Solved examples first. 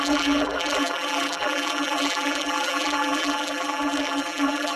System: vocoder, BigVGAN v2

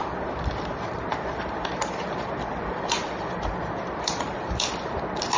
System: vocoder, BigVGAN v2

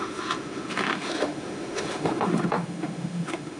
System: autoencoder, DAC-VAE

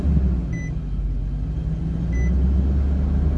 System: none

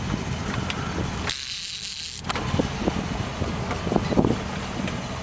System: none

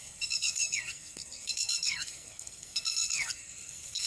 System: codec, SNAC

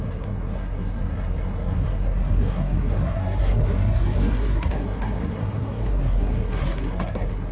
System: codec, SNAC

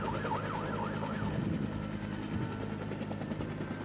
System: none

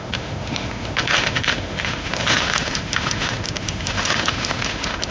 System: autoencoder, DAC-VAE